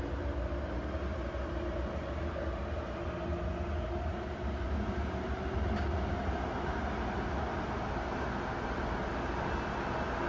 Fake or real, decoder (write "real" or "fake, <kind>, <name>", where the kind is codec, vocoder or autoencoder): real